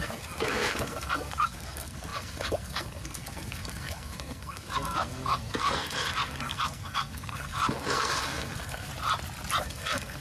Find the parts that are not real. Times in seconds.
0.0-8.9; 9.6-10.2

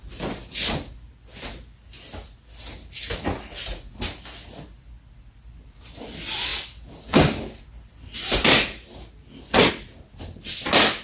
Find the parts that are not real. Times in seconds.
none

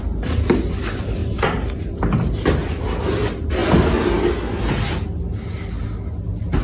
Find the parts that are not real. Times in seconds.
none

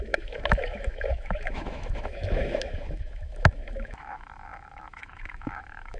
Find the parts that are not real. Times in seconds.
0.0-6.0

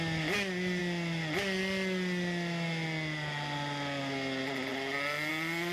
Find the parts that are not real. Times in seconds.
none

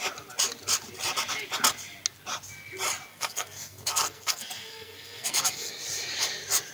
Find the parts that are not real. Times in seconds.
3.1-5.7